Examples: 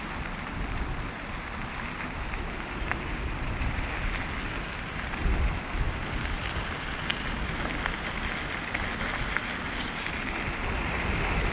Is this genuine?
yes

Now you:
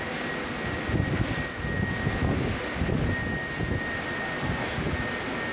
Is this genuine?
yes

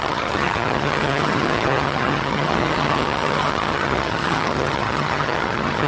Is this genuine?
no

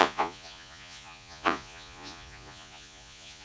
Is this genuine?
no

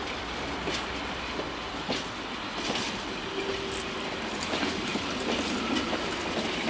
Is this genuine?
yes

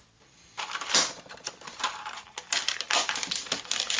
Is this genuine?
yes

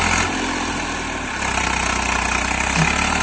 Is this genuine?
yes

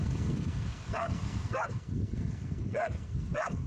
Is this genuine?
no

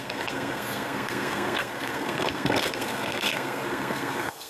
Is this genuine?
no